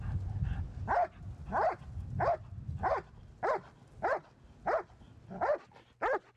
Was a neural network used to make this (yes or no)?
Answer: no